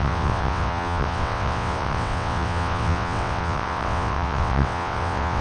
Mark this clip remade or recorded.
remade